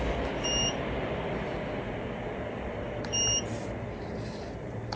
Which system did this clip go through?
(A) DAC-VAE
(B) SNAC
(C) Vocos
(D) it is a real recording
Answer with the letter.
D